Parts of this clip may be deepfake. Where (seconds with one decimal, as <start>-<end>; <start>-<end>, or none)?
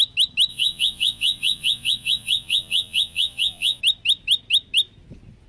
0.5-3.8